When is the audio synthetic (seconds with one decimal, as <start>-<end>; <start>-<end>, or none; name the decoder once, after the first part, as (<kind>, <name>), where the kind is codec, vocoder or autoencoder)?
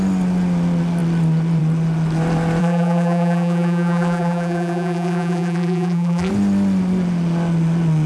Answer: 2.6-6.3 (vocoder, BigVGAN v2)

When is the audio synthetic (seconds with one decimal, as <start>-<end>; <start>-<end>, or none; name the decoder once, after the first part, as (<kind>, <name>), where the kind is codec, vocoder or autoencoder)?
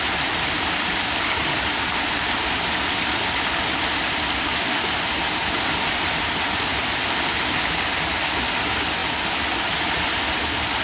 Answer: none